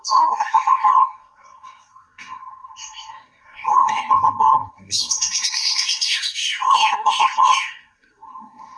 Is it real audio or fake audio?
fake